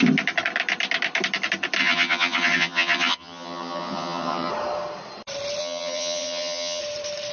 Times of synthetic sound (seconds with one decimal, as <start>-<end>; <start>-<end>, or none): 1.8-4.5; 5.6-6.8